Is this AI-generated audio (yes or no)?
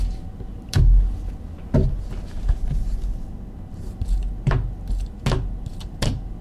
no